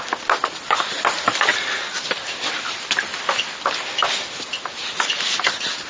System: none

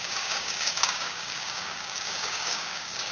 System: codec, DAC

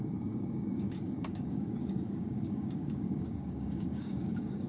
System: codec, DAC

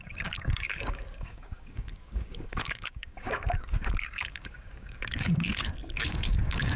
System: codec, DAC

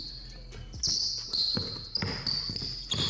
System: none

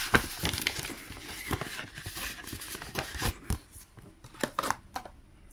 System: none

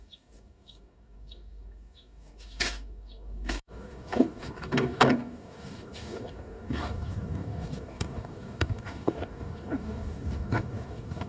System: codec, DAC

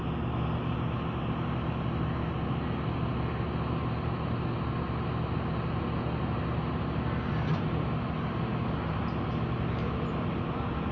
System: none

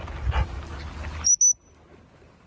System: none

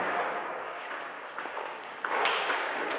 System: codec, DAC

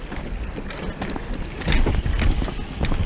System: none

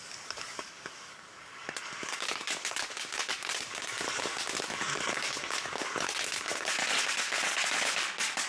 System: codec, DAC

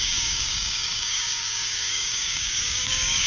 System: codec, DAC